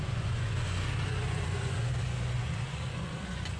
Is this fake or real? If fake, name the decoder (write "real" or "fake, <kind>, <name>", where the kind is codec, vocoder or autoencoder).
fake, vocoder, Vocos